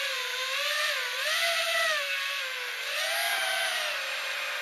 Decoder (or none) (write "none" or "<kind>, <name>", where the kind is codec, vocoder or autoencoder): none